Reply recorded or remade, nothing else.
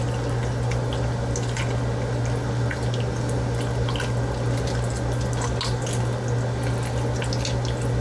recorded